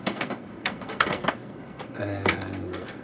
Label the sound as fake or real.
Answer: fake